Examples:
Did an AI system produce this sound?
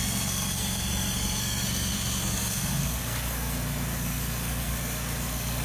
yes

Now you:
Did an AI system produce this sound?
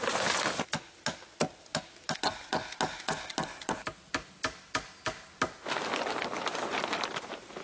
no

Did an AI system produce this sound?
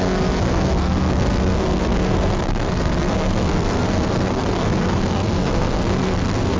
yes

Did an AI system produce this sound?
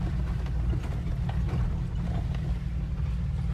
no